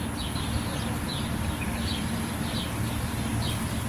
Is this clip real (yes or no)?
yes